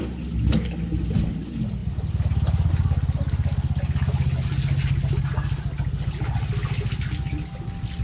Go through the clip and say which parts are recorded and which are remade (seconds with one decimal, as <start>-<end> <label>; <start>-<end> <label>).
0.0-8.0 recorded